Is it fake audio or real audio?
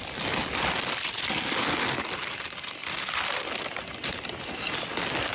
real